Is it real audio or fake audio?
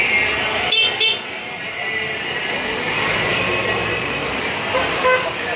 real